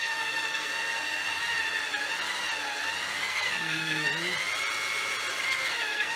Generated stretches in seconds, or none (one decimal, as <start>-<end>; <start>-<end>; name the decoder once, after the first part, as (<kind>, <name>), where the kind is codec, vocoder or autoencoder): 0.0-1.2 (codec, SNAC); 3.1-4.1; 5.4-6.2